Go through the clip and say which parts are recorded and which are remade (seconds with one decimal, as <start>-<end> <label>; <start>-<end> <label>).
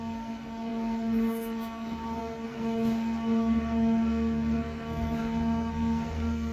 0.0-6.5 remade